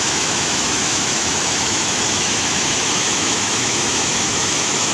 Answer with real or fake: fake